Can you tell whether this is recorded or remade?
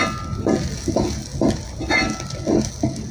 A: recorded